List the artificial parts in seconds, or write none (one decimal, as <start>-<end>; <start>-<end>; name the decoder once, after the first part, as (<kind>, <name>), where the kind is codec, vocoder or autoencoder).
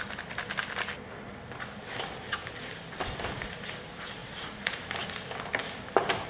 4.2-4.8 (vocoder, Vocos)